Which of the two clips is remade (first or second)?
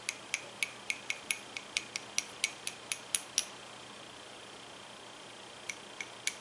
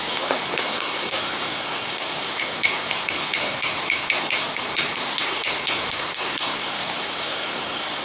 second